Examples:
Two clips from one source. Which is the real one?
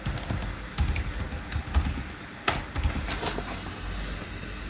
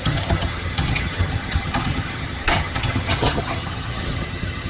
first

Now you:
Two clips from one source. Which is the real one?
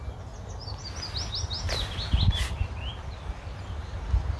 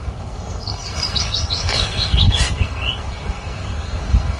first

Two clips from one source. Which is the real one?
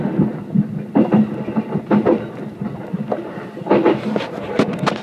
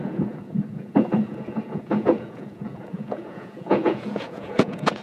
first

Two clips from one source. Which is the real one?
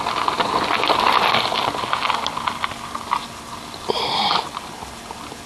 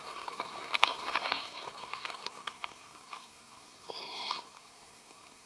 first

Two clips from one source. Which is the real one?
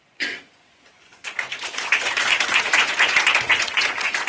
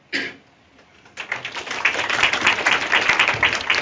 second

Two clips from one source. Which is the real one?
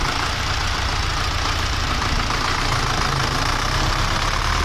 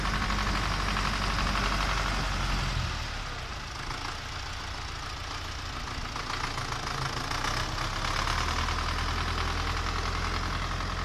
second